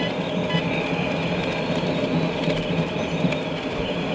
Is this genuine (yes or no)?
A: yes